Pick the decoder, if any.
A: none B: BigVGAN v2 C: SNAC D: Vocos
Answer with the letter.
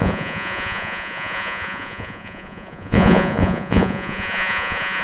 D